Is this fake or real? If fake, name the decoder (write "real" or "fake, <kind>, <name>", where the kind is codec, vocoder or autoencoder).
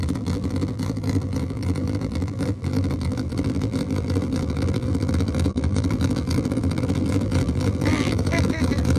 fake, vocoder, BigVGAN v2